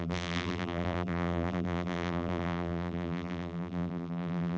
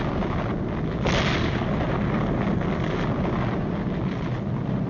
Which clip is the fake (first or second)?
first